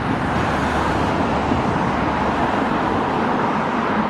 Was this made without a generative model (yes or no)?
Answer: yes